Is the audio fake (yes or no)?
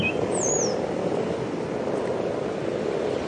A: no